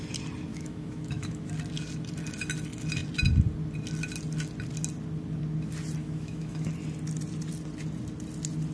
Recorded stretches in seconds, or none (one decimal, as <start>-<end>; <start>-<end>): 0.0-0.5; 1.5-6.0; 6.7-8.7